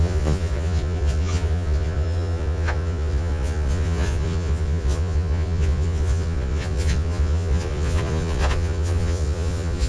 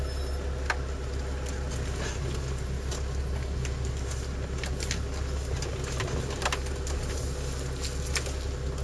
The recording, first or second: second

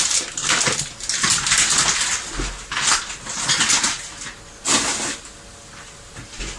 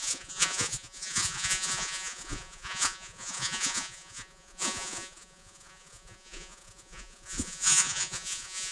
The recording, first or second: first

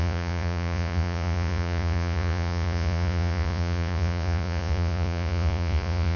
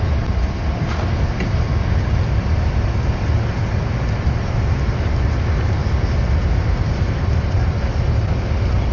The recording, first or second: second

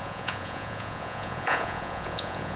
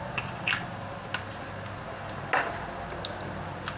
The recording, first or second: second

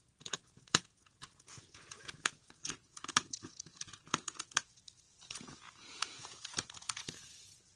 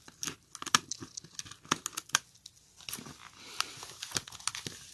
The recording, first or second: second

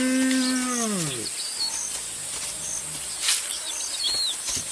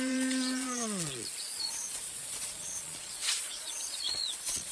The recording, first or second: first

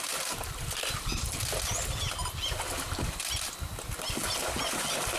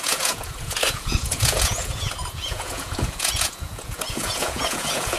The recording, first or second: first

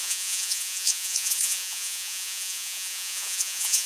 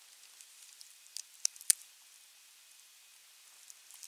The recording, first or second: second